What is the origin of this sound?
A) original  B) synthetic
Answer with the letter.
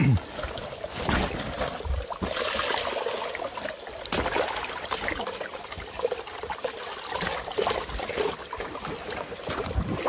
A